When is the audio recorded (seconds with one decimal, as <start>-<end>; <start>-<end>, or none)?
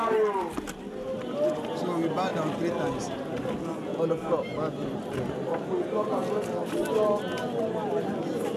0.0-8.6